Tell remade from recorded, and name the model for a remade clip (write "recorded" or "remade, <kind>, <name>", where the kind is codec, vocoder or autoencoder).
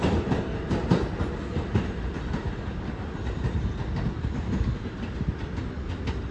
recorded